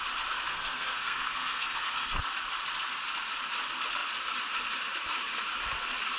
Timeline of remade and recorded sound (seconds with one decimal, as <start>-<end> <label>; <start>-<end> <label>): 0.0-0.5 recorded; 0.5-2.2 remade; 2.2-6.2 recorded